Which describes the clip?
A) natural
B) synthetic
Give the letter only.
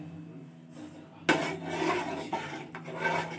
A